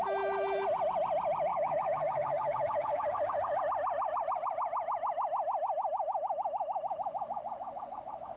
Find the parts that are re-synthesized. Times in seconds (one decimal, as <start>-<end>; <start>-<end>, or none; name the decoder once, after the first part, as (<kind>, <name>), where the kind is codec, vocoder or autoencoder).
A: 1.5-3.6 (codec, DAC)